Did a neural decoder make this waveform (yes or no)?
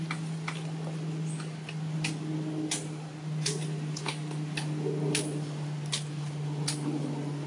no